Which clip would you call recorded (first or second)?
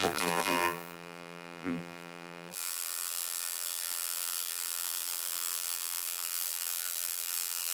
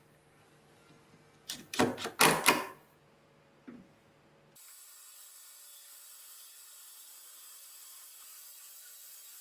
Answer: second